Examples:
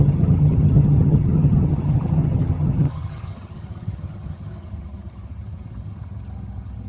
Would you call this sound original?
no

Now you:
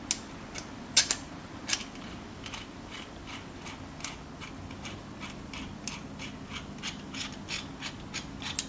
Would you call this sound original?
yes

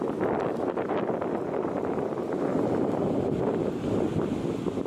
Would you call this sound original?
yes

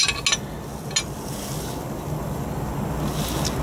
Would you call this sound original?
yes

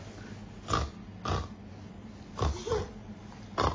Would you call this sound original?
yes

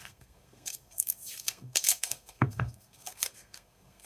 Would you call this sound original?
no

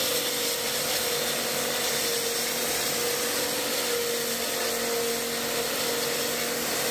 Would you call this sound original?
yes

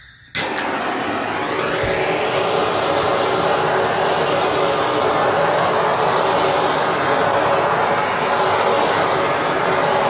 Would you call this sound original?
yes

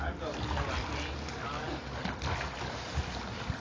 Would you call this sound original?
yes